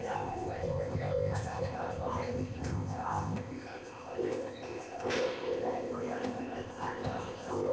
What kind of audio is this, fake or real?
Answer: fake